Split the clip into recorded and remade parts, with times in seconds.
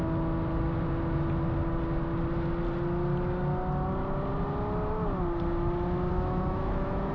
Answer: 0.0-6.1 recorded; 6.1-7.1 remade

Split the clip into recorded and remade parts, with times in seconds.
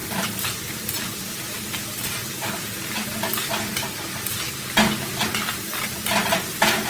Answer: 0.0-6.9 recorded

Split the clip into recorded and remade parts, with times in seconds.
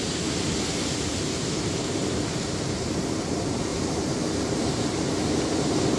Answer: 0.0-1.1 recorded; 1.1-3.0 remade; 3.0-3.7 recorded; 3.7-5.3 remade; 5.3-6.0 recorded